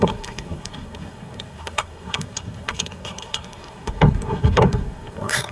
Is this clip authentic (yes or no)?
no